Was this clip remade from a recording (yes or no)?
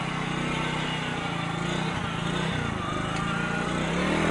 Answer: no